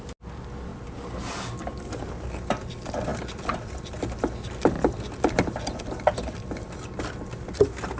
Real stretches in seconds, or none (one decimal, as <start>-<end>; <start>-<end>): 0.0-8.0